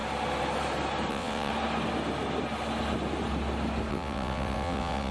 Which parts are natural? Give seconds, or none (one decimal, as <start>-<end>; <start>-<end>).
0.0-1.1; 1.5-3.9